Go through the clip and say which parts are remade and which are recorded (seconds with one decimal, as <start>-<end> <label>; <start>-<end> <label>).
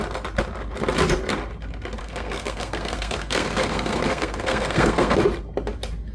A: 0.0-2.0 recorded; 2.0-5.2 remade; 5.2-6.1 recorded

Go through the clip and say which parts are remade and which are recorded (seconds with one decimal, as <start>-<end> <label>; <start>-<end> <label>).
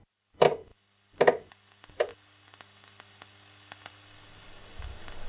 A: 0.0-5.3 recorded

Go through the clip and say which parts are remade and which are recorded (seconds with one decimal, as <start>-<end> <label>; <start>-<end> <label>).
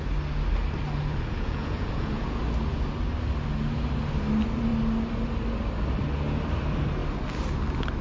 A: 0.0-1.0 recorded; 1.0-2.4 remade; 2.4-8.0 recorded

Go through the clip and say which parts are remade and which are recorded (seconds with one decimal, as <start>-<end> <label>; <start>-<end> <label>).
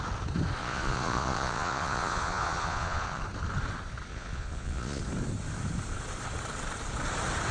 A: 0.0-0.6 recorded; 0.6-3.2 remade; 3.2-4.1 recorded; 4.1-5.0 remade; 5.0-7.5 recorded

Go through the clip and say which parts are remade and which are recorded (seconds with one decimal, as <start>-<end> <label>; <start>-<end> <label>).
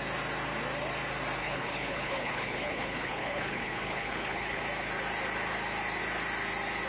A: 0.0-1.4 recorded; 1.4-4.6 remade; 4.6-6.9 recorded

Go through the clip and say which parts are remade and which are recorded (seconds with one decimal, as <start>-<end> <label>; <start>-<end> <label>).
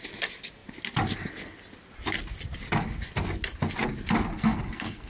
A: 0.0-4.3 recorded; 4.3-5.1 remade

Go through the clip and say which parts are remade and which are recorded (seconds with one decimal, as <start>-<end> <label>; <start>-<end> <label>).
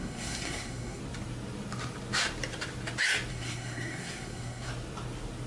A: 0.0-1.0 remade; 1.0-3.3 recorded; 3.3-4.7 remade; 4.7-5.5 recorded